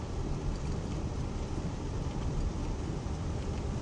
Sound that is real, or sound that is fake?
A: fake